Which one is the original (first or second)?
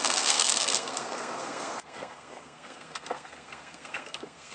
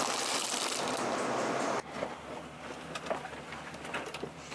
second